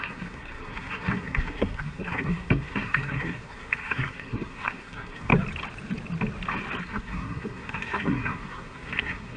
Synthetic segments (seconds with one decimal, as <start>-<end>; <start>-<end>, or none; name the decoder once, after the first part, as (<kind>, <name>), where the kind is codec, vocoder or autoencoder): 0.0-5.3 (codec, SNAC); 6.8-9.4